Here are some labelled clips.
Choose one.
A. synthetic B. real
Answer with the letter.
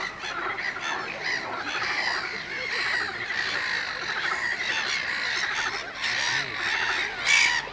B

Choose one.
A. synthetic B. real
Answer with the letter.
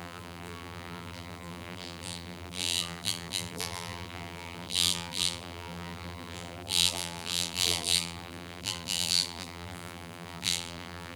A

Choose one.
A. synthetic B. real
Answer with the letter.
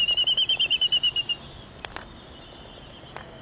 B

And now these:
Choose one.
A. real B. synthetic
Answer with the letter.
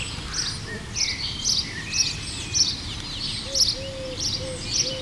A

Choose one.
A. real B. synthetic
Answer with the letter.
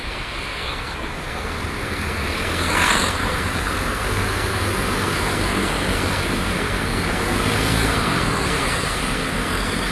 B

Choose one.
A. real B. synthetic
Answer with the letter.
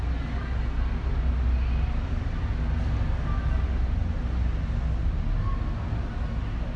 A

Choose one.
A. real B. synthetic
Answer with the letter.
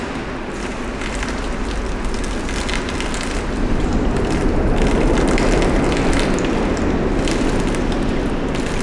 A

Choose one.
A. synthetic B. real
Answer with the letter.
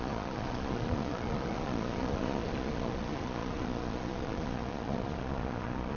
A